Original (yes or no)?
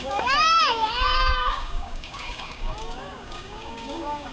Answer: no